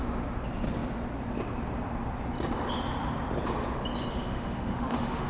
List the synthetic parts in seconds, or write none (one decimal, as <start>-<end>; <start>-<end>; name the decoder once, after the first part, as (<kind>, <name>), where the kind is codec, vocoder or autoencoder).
4.1-5.3 (autoencoder, DAC-VAE)